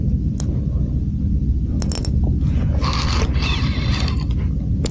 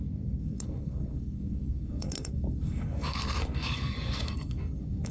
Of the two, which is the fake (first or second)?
second